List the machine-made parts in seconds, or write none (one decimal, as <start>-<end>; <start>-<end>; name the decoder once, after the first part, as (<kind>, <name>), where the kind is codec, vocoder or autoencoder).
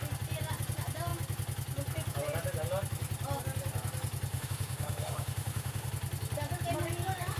4.3-5.9 (autoencoder, DAC-VAE)